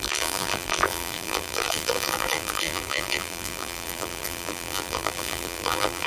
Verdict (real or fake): fake